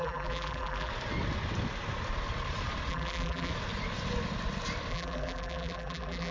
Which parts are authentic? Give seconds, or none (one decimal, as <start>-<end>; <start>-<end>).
0.9-2.9; 3.5-4.9